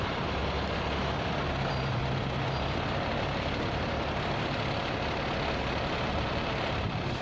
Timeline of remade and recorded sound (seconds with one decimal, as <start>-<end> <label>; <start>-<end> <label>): 0.0-0.4 remade; 0.4-1.3 recorded; 1.3-2.0 remade; 2.0-5.6 recorded; 5.6-7.2 remade